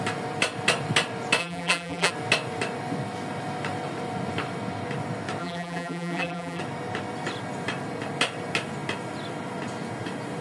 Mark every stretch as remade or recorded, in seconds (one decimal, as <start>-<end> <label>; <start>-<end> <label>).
0.0-1.4 recorded; 1.4-2.1 remade; 2.1-5.4 recorded; 5.4-6.6 remade; 6.6-10.4 recorded